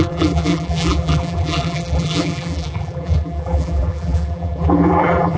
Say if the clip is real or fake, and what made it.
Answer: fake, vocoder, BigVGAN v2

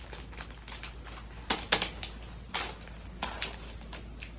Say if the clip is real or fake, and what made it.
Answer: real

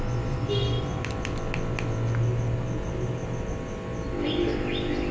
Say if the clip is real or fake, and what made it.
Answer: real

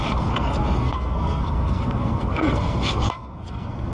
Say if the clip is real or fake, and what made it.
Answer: fake, codec, SNAC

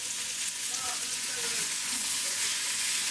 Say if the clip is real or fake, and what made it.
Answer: fake, vocoder, Vocos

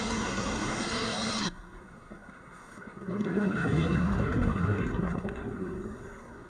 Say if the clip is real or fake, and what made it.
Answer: fake, codec, SNAC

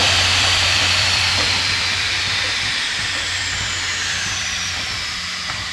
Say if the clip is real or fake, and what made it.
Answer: fake, vocoder, BigVGAN v2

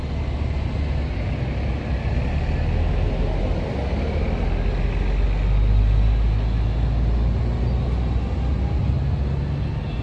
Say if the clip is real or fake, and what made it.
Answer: real